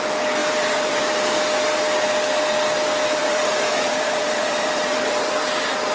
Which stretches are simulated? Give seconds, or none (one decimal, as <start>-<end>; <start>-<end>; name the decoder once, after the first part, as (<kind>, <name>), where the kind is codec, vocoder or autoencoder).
0.4-1.0 (vocoder, BigVGAN v2); 3.2-5.3